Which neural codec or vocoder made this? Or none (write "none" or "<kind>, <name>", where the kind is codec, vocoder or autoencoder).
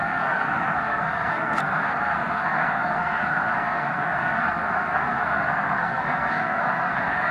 codec, SNAC